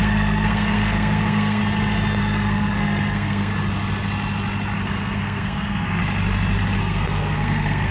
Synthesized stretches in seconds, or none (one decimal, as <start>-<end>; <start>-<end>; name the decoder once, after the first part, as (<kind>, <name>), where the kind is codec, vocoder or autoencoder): 0.0-1.6 (codec, SNAC); 2.2-3.5; 4.8-6.0; 6.8-7.9